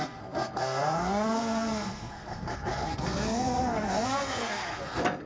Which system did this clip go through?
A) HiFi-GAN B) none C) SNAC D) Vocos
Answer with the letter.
C